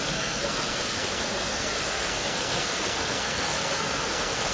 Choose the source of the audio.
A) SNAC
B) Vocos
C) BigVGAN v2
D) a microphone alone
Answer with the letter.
A